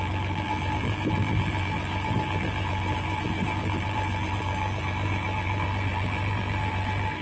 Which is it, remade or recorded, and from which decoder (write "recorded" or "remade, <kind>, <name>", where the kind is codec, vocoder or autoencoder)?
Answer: remade, vocoder, BigVGAN v2